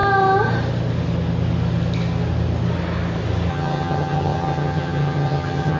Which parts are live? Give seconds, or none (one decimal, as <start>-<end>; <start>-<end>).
0.0-3.5